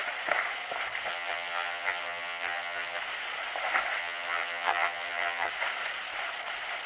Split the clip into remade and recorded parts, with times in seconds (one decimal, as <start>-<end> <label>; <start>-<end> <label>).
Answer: 0.0-1.1 recorded; 1.1-3.0 remade; 3.0-4.0 recorded; 4.0-5.5 remade; 5.5-6.9 recorded